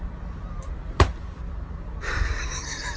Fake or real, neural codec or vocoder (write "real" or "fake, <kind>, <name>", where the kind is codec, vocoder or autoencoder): fake, vocoder, BigVGAN v2